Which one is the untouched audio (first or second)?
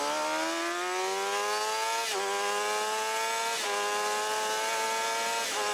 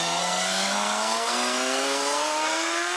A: first